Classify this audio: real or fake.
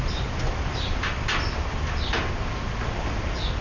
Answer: real